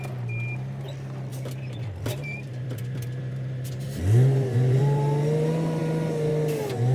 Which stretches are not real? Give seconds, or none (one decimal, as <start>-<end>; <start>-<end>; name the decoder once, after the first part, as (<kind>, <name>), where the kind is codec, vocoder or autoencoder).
1.3-4.8 (vocoder, BigVGAN v2)